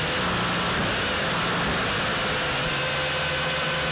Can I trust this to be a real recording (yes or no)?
yes